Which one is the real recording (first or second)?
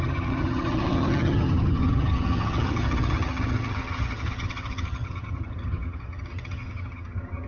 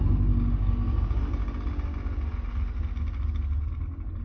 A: second